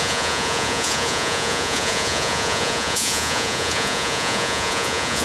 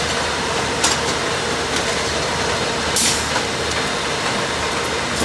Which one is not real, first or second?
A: first